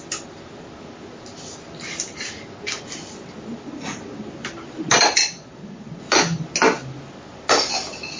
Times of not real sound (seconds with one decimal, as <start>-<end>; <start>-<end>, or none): 5.2-6.0